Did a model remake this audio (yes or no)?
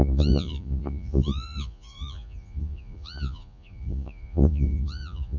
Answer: yes